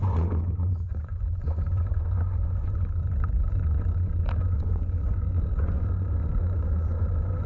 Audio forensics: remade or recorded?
remade